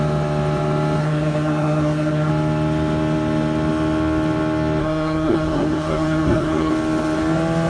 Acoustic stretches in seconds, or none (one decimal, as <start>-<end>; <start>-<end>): 0.0-1.0; 2.3-4.8; 6.7-7.7